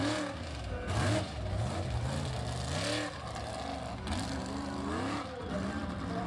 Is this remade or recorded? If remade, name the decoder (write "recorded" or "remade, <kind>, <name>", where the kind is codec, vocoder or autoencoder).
recorded